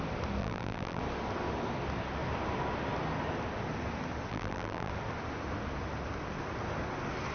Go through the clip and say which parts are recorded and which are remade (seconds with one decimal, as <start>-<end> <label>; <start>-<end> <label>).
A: 0.0-0.4 recorded; 0.4-1.0 remade; 1.0-4.3 recorded; 4.3-4.9 remade; 4.9-7.3 recorded